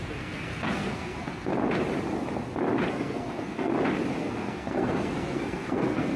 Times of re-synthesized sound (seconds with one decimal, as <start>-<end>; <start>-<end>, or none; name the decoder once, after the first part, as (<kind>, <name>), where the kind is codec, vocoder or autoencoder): 0.0-1.5 (codec, SNAC); 2.9-3.7; 4.2-6.2